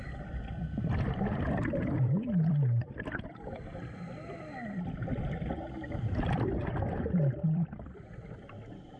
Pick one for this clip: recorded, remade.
remade